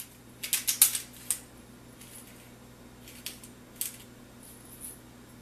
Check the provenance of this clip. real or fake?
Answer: real